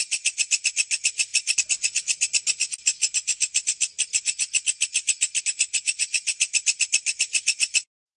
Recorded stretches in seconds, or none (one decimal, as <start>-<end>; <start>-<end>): 0.0-8.2